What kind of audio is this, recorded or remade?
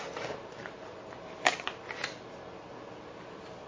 recorded